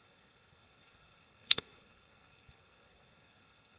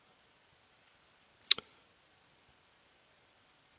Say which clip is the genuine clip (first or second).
second